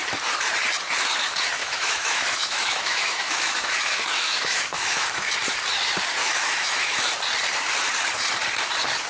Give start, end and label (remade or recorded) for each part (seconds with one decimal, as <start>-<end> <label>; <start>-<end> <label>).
0.0-1.6 recorded; 1.6-5.3 remade; 5.3-6.2 recorded; 6.2-7.1 remade; 7.1-9.1 recorded